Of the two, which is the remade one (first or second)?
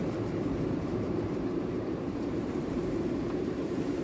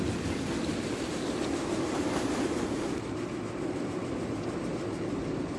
first